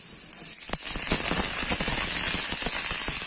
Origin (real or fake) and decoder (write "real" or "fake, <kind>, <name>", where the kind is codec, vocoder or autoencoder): real